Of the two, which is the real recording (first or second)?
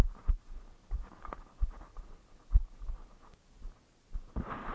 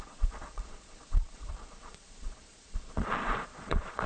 first